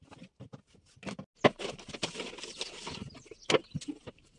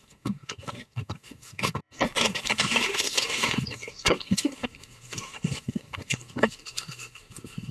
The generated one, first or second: second